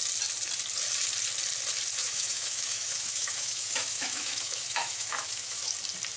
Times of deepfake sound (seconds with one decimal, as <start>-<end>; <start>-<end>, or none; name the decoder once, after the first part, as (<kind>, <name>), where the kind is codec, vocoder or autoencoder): 2.0-5.7 (autoencoder, DAC-VAE)

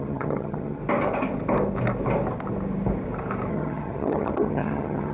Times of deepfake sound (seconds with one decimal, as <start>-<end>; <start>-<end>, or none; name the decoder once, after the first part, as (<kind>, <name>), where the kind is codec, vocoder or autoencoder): 0.0-0.8 (vocoder, HiFi-GAN); 3.5-5.1

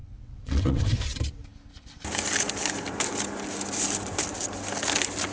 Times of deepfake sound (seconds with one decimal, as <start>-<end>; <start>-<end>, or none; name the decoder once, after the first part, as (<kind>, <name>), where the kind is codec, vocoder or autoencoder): 0.0-0.8 (vocoder, WaveNeXt)

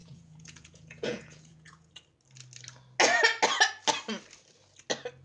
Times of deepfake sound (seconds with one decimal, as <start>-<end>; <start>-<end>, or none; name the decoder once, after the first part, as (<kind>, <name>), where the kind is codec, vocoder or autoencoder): 0.0-1.9 (vocoder, Vocos)

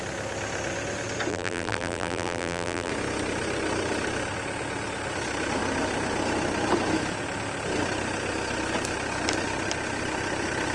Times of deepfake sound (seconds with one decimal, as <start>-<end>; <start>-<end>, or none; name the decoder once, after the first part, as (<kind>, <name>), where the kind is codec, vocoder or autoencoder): 1.3-2.9 (vocoder, BigVGAN v2)

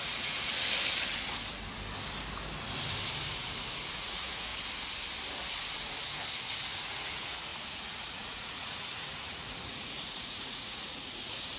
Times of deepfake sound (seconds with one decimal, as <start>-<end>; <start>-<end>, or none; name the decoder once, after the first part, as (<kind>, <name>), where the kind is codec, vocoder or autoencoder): 0.0-0.5 (vocoder, Vocos); 3.9-4.5; 6.7-11.6